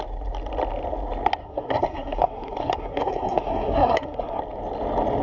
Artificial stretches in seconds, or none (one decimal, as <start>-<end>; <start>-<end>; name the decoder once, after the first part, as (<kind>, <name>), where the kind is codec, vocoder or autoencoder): 1.4-4.4 (codec, SNAC)